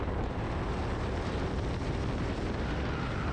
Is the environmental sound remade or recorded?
recorded